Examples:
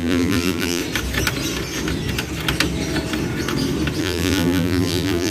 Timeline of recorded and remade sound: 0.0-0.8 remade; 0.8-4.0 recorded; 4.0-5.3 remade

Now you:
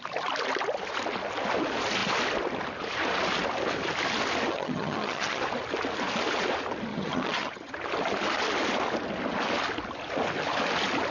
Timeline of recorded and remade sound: 0.0-4.5 recorded; 4.5-5.4 remade; 5.4-6.9 recorded; 6.9-7.7 remade; 7.7-11.1 recorded

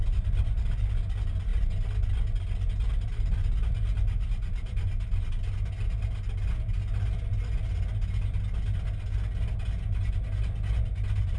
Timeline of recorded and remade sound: 0.0-11.4 recorded

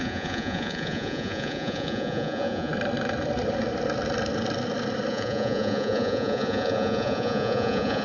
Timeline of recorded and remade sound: 0.0-2.7 remade; 2.7-5.1 recorded; 5.1-8.0 remade

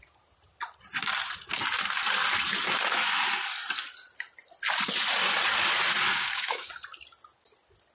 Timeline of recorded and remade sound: 0.0-6.1 recorded; 6.1-6.7 remade; 6.7-7.9 recorded

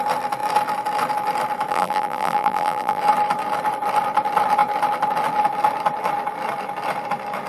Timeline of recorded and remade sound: 0.0-1.7 recorded; 1.7-3.0 remade; 3.0-7.5 recorded

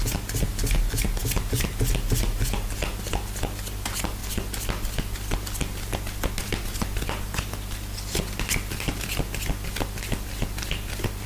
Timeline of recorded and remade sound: 0.0-11.3 recorded